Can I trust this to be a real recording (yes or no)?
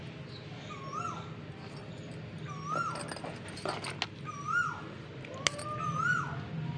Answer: yes